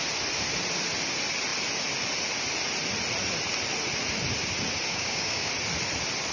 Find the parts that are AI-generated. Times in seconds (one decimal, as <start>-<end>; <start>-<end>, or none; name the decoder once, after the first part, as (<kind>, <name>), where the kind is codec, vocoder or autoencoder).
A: 4.9-5.5 (codec, DAC)